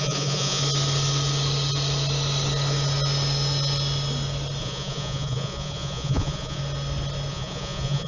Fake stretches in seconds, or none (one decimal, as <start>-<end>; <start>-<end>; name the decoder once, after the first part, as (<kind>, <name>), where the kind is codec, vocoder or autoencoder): 0.0-0.6 (vocoder, Vocos); 4.6-6.6; 7.3-8.1